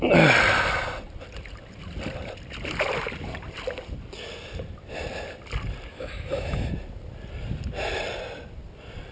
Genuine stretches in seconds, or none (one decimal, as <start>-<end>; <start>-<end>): 0.0-5.9; 6.7-9.1